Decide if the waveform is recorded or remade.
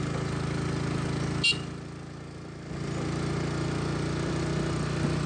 recorded